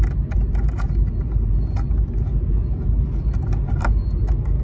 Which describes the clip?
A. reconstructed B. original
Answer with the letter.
B